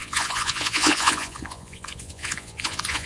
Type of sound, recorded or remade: remade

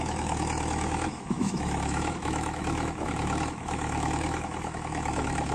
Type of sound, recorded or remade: remade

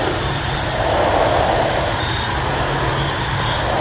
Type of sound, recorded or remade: recorded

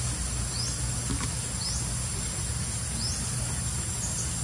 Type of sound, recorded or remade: recorded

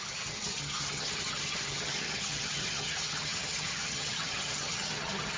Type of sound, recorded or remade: remade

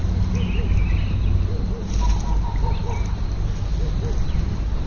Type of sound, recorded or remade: recorded